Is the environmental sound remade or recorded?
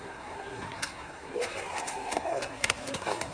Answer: remade